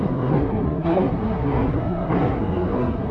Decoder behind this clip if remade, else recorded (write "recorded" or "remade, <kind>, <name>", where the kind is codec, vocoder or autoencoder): remade, codec, SNAC